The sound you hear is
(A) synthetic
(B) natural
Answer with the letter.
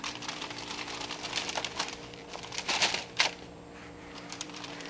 A